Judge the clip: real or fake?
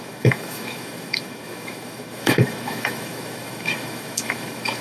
fake